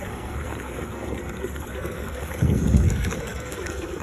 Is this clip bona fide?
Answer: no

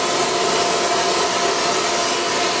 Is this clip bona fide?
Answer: yes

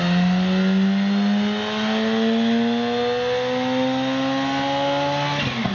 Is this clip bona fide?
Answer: yes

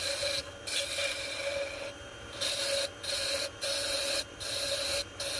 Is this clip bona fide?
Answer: yes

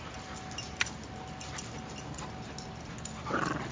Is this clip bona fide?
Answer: yes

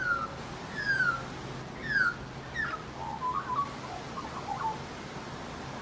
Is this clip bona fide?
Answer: yes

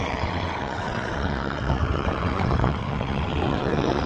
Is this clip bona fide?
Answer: no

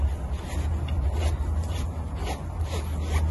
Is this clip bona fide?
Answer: yes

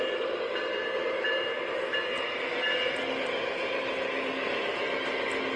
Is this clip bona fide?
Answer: yes